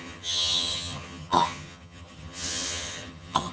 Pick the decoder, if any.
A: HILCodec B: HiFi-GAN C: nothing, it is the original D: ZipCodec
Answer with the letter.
B